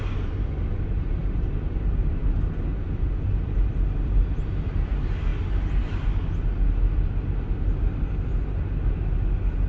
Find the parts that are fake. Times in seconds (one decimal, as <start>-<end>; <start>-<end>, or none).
1.2-2.2; 2.7-3.7